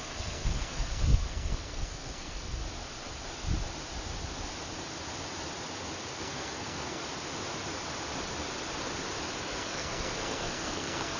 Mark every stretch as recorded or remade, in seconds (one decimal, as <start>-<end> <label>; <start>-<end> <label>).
0.0-2.6 remade; 2.6-6.2 recorded; 6.2-7.0 remade; 7.0-9.4 recorded; 9.4-11.2 remade